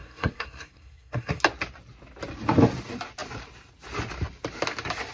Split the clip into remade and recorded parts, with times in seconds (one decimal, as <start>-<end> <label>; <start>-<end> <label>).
0.0-1.4 remade; 1.4-5.1 recorded

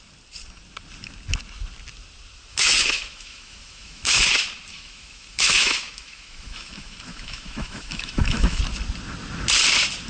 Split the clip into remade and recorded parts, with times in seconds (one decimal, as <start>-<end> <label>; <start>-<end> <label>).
0.0-2.5 recorded; 2.5-4.2 remade; 4.2-4.7 recorded; 4.7-8.6 remade; 8.6-10.1 recorded

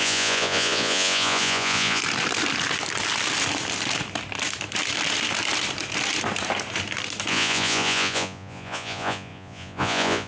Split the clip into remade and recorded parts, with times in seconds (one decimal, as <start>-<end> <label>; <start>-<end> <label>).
0.0-2.0 remade; 2.0-7.3 recorded; 7.3-10.3 remade

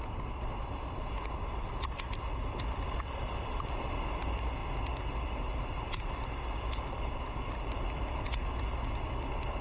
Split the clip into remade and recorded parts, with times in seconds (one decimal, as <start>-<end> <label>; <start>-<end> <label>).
0.0-4.6 remade; 4.6-6.6 recorded; 6.6-9.6 remade

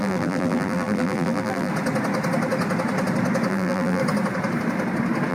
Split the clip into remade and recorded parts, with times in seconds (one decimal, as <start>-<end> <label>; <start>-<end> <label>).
0.0-1.7 remade; 1.7-3.5 recorded; 3.5-4.0 remade; 4.0-5.3 recorded

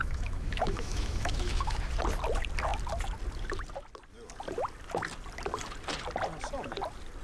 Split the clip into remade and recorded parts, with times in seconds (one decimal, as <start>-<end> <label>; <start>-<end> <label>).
0.0-1.8 remade; 1.8-7.2 recorded

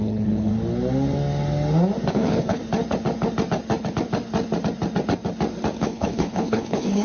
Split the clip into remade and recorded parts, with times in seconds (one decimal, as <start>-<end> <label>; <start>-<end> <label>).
0.0-0.5 remade; 0.5-2.1 recorded; 2.1-2.6 remade; 2.6-5.8 recorded; 5.8-7.0 remade